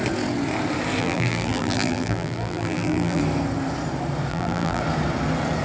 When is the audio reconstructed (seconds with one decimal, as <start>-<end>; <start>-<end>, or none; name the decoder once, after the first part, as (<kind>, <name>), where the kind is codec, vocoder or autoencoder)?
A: 1.0-3.2 (vocoder, BigVGAN v2); 4.3-4.8